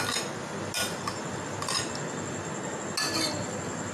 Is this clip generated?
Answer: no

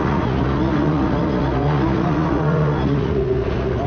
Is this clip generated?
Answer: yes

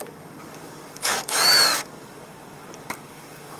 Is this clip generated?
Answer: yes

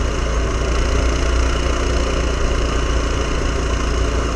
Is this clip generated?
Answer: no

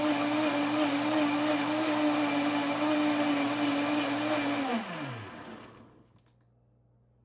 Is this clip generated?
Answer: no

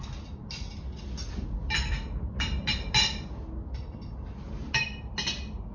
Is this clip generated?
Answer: no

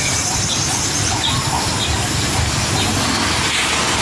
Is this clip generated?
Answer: no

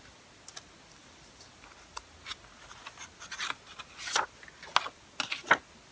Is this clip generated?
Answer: no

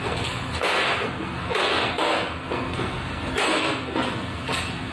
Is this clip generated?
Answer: yes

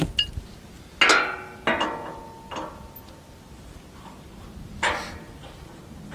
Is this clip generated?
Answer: no